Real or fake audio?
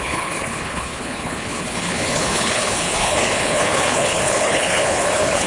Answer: fake